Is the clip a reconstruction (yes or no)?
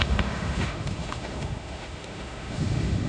yes